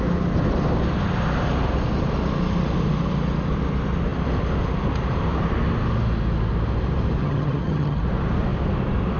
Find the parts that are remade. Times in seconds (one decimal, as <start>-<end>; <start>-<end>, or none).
7.2-8.0